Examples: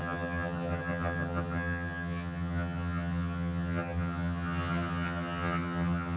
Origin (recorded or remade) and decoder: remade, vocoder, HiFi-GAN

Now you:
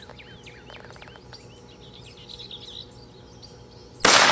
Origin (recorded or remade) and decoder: recorded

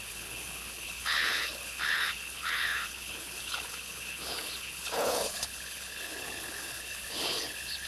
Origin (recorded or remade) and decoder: remade, codec, HILCodec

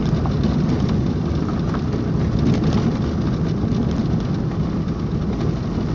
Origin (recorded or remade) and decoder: recorded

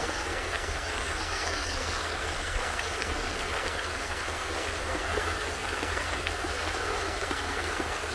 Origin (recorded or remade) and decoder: remade, codec, SNAC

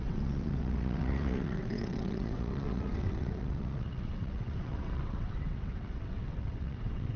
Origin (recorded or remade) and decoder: remade, vocoder, WaveNeXt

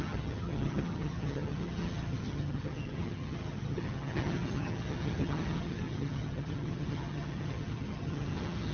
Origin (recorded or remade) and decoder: remade, vocoder, HiFi-GAN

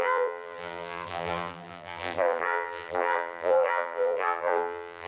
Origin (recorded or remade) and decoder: remade, vocoder, BigVGAN v2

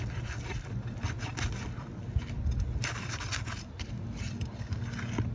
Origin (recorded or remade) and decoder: recorded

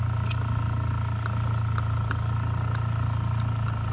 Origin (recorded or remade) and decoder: recorded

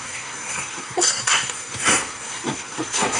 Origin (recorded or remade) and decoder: remade, codec, SNAC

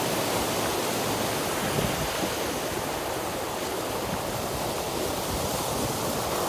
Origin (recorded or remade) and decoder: recorded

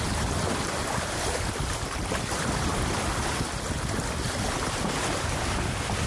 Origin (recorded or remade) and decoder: recorded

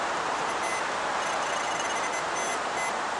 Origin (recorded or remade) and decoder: recorded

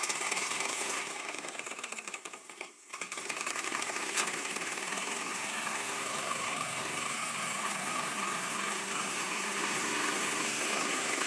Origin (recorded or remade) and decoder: remade, codec, SNAC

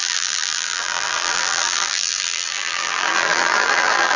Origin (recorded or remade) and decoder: remade, vocoder, BigVGAN v2